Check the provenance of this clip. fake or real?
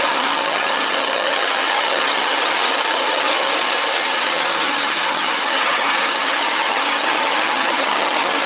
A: fake